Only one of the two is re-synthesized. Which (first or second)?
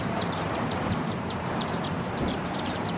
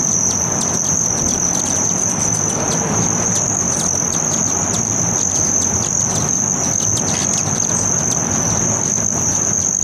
first